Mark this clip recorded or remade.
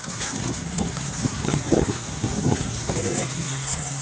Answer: remade